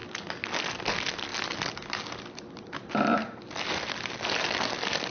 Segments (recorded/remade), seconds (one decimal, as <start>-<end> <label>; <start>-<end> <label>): 0.0-5.1 recorded